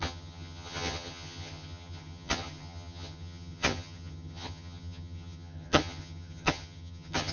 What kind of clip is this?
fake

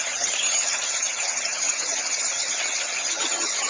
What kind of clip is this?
fake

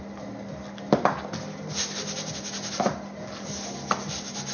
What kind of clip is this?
real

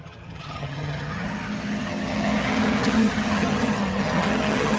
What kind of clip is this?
fake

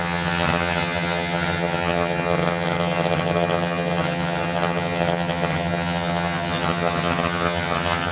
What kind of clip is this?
fake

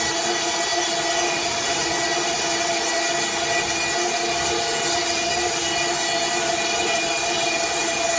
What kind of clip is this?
real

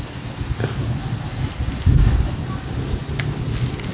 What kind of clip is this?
real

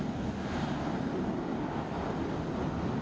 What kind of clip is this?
real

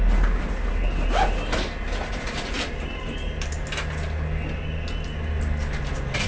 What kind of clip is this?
real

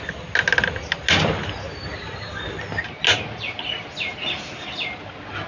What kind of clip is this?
real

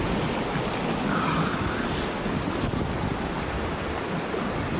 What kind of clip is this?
real